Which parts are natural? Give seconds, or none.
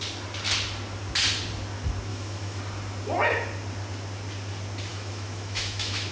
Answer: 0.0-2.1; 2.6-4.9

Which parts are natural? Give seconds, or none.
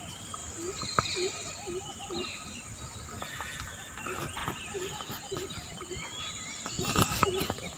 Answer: 0.0-7.8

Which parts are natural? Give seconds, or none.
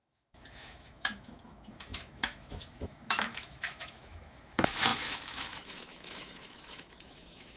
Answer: none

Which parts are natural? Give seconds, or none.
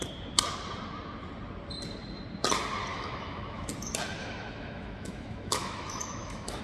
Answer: 0.0-2.9; 3.7-4.2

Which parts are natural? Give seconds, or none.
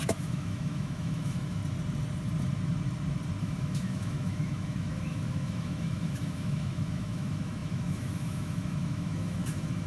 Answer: 1.6-3.4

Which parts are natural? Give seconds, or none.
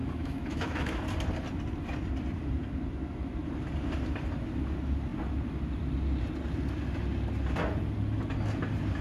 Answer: 1.0-9.0